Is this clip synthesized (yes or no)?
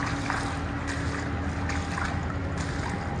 no